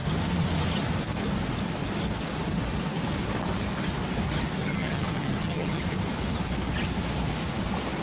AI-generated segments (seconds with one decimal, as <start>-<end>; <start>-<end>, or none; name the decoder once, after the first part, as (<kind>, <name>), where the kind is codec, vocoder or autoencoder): 4.6-5.8 (vocoder, HiFi-GAN)